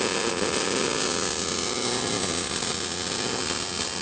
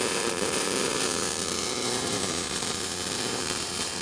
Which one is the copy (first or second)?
second